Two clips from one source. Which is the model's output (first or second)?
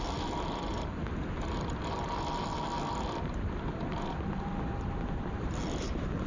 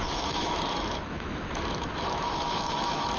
second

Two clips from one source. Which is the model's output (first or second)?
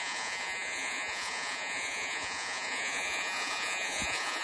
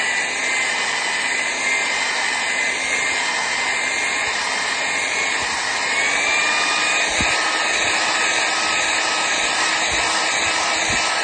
first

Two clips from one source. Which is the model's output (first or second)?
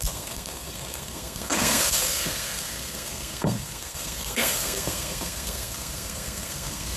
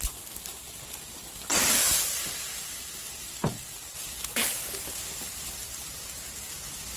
first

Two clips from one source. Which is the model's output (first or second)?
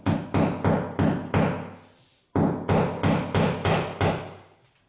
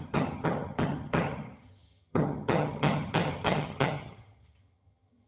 second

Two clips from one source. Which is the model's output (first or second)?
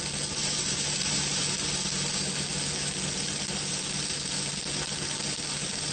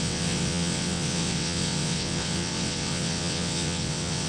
second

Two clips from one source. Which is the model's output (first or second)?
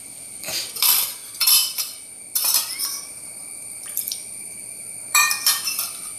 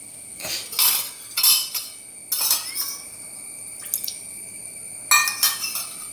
first